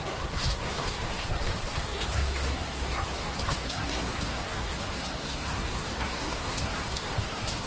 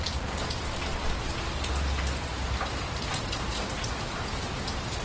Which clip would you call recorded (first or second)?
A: second